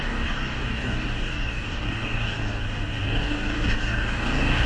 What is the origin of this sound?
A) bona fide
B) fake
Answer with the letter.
B